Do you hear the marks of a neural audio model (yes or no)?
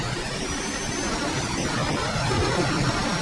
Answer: no